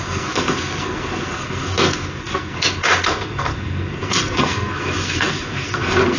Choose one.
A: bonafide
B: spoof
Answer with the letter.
B